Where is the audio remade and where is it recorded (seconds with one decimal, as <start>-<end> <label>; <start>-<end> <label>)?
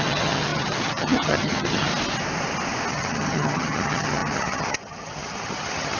0.0-1.9 remade; 1.9-2.9 recorded; 2.9-6.0 remade